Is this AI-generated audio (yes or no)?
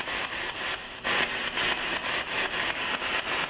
no